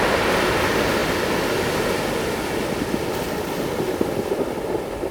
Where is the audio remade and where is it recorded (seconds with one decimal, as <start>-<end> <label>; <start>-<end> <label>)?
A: 0.0-5.1 recorded